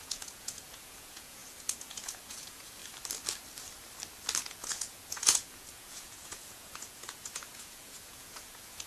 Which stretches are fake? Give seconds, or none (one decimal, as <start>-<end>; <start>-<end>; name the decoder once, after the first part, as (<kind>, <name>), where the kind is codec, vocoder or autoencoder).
0.0-2.8 (vocoder, Vocos); 4.4-8.9